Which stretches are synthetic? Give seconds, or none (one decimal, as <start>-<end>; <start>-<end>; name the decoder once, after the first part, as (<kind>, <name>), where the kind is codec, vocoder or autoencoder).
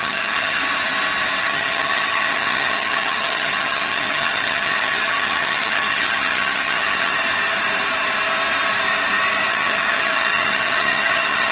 0.0-0.6 (vocoder, HiFi-GAN); 1.4-7.1; 9.5-11.5